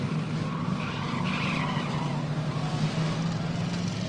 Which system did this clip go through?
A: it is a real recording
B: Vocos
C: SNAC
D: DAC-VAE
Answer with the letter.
A